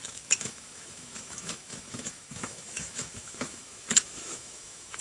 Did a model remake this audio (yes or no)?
yes